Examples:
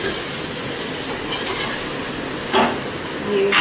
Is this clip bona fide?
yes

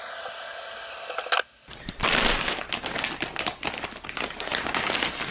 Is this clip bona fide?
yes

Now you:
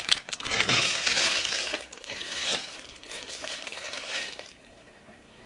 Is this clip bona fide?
no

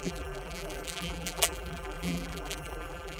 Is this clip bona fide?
no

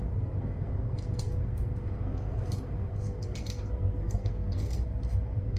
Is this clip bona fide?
no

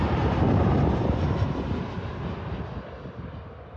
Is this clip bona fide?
yes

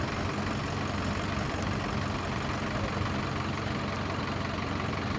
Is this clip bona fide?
yes